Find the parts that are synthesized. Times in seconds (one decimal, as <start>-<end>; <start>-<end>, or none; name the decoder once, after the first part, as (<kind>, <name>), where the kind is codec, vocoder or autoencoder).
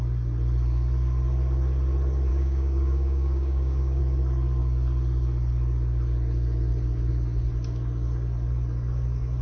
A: 2.3-4.0 (codec, DAC)